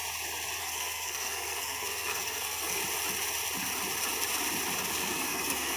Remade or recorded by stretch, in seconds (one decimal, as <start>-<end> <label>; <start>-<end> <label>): 0.0-0.6 recorded; 0.6-2.8 remade; 2.8-4.9 recorded; 4.9-5.8 remade